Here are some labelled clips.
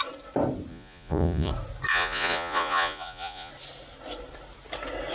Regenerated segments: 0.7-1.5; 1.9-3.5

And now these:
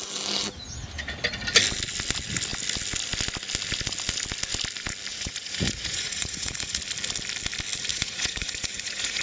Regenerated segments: 5.1-6.8; 7.9-9.2